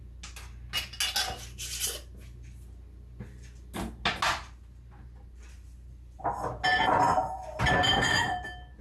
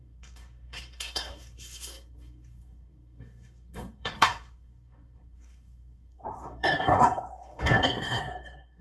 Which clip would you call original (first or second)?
first